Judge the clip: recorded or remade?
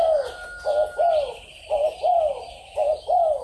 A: recorded